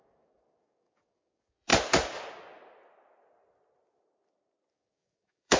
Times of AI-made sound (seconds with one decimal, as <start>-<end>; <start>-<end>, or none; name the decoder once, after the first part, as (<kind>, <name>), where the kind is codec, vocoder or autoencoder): 0.0-1.7 (codec, DAC); 4.7-5.6